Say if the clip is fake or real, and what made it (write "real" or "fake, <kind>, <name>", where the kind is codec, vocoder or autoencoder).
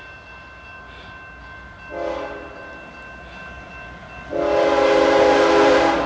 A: real